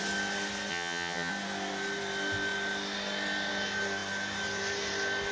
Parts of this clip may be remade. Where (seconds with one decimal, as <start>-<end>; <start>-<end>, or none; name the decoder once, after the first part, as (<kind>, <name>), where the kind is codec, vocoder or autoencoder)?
0.7-1.3 (vocoder, HiFi-GAN)